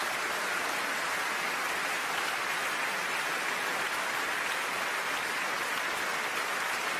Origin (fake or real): real